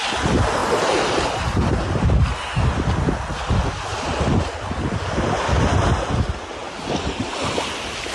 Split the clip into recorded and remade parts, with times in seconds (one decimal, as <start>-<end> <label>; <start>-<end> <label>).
0.0-8.1 recorded